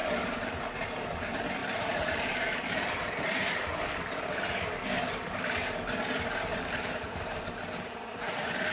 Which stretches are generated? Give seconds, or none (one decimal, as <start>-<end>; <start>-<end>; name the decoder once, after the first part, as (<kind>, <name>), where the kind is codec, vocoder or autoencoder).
0.0-0.6 (vocoder, BigVGAN v2); 1.6-3.5; 6.5-8.7